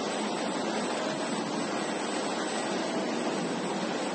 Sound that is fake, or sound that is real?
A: real